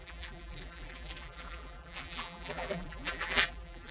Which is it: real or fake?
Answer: fake